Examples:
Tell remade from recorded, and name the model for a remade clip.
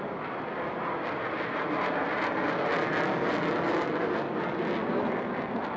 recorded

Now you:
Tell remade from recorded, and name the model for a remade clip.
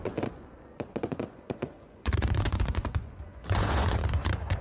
remade, vocoder, Vocos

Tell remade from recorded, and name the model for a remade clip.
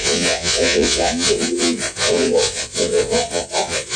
remade, vocoder, Vocos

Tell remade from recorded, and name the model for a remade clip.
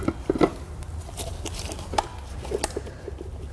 recorded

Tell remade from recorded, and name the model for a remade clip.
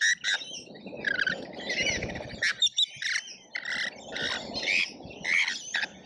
recorded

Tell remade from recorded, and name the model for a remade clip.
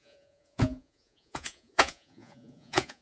remade, vocoder, Vocos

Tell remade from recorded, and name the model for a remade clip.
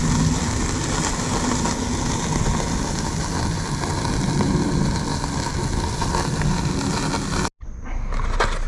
recorded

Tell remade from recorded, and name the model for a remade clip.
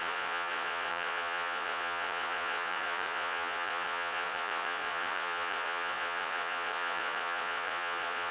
remade, vocoder, Vocos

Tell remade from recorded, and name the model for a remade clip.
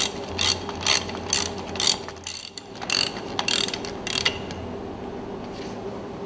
recorded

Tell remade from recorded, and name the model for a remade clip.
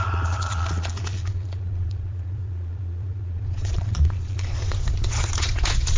remade, vocoder, Vocos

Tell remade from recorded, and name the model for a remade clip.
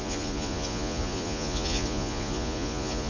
remade, vocoder, Vocos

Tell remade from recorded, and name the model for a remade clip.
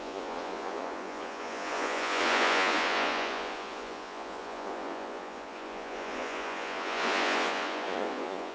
remade, vocoder, Vocos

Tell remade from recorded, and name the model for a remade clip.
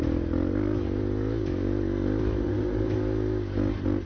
recorded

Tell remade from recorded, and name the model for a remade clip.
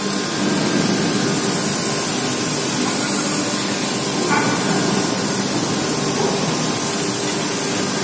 recorded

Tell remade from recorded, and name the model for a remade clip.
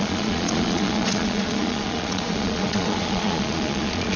remade, vocoder, Vocos